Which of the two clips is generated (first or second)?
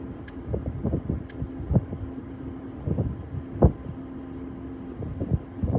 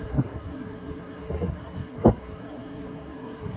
second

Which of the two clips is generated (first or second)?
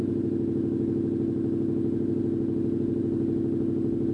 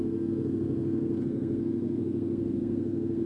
second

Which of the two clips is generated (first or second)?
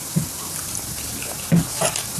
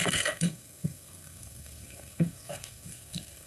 second